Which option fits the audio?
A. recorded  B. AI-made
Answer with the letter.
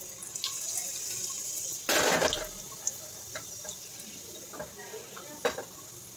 A